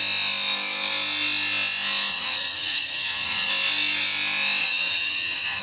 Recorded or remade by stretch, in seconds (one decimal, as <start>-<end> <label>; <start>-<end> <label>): 0.0-2.1 recorded; 2.1-3.5 remade; 3.5-4.6 recorded; 4.6-5.6 remade